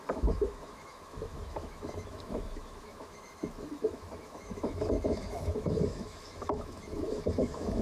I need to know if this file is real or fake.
fake